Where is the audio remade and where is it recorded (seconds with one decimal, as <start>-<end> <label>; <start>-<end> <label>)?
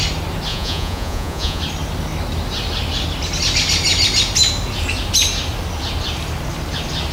0.0-0.5 recorded; 0.5-1.6 remade; 1.6-7.1 recorded